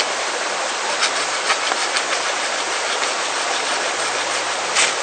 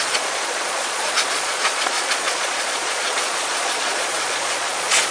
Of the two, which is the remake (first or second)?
second